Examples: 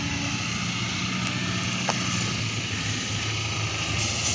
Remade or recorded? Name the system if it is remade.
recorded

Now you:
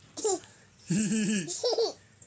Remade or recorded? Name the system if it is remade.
recorded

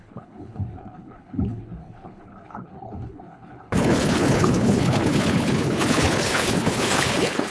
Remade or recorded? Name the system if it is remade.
remade, codec, HILCodec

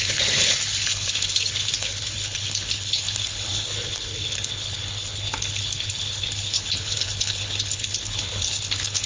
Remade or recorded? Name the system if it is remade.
remade, codec, HILCodec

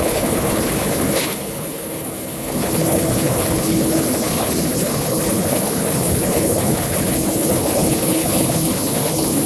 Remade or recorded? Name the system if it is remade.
remade, codec, HILCodec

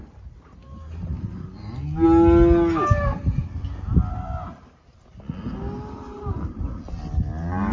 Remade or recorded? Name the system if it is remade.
recorded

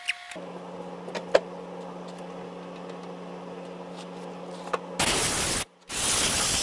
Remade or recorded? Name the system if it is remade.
recorded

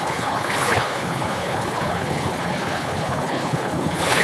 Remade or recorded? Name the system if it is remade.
remade, codec, HILCodec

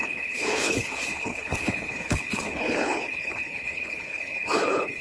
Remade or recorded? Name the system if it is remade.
remade, codec, HILCodec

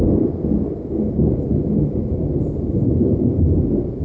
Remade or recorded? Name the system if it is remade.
recorded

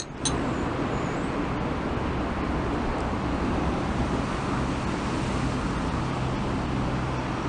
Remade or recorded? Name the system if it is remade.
recorded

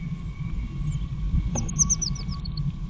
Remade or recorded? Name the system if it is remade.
recorded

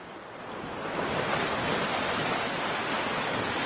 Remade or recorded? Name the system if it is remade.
recorded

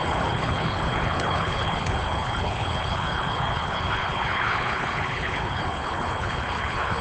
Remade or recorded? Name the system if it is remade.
remade, codec, HILCodec